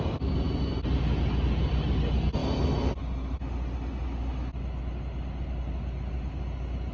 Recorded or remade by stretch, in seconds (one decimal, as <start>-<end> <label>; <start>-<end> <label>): 0.0-6.9 recorded